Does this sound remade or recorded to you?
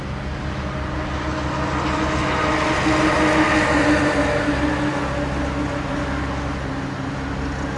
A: recorded